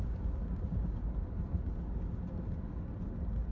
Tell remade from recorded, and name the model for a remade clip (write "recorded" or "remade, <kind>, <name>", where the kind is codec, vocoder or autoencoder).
recorded